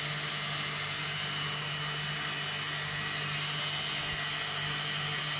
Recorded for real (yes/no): yes